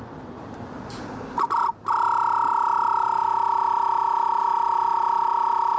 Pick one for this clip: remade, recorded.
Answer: remade